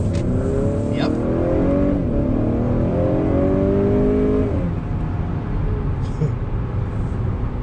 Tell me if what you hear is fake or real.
real